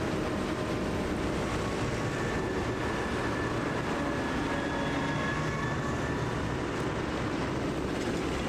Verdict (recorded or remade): recorded